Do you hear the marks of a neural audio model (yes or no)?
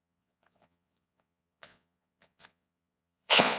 yes